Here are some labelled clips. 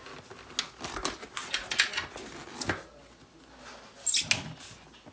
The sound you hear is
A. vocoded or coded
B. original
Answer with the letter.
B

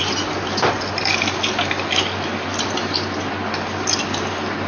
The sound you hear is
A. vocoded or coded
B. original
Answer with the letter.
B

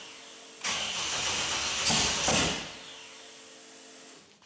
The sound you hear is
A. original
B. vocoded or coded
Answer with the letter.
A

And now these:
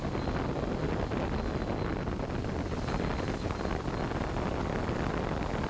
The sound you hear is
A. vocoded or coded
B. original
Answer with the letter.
B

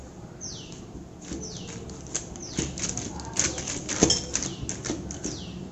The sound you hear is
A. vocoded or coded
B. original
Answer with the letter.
B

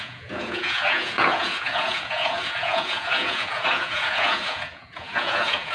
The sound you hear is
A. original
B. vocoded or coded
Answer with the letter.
B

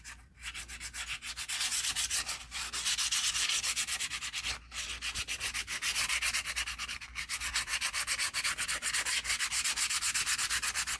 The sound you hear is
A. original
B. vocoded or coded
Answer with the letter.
A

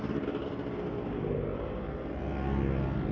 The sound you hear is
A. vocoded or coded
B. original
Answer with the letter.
B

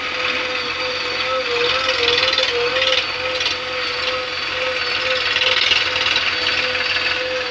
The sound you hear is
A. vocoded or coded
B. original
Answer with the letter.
B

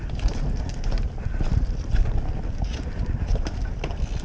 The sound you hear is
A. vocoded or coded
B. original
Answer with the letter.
B